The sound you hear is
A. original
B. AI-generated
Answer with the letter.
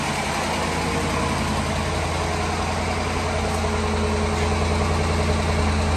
A